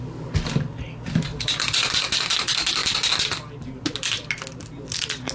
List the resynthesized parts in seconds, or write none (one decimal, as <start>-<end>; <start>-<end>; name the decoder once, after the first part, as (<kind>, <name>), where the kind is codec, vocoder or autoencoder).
none

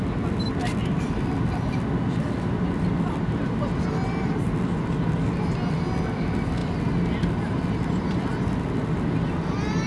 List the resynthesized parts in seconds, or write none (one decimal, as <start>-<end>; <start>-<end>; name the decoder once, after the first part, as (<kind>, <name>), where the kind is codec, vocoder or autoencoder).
none

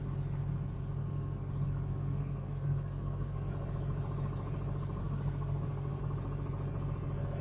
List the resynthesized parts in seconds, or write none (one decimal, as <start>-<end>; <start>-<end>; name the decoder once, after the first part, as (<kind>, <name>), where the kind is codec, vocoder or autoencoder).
1.0-1.5 (codec, SNAC); 1.9-3.5; 5.0-6.0

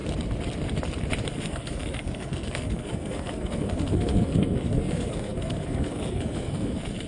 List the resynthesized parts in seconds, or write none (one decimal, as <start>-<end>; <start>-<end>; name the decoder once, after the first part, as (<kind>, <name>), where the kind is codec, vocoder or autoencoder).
1.3-7.1 (codec, SNAC)